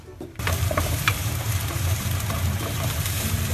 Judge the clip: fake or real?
fake